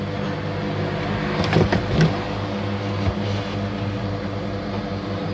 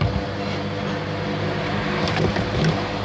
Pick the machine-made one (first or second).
second